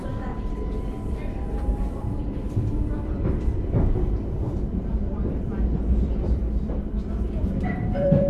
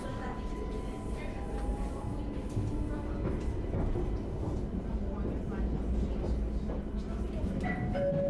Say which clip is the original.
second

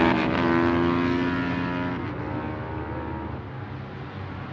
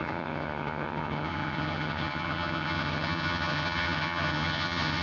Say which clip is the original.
first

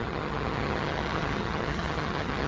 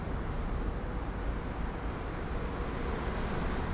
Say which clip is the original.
second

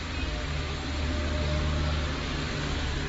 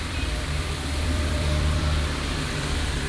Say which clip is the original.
first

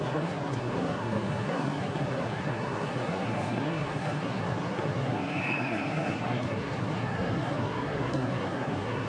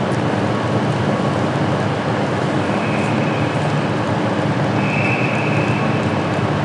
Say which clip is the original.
second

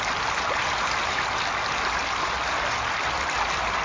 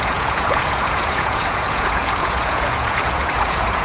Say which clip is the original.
first